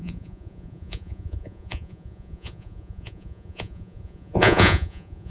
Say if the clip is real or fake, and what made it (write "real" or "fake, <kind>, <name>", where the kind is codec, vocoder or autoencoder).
fake, vocoder, Vocos